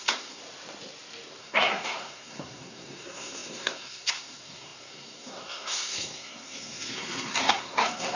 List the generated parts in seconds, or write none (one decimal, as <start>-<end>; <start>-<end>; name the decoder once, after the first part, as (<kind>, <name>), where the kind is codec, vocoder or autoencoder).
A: 0.0-0.4 (codec, SNAC); 1.4-8.2